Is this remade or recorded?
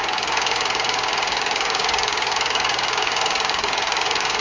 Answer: remade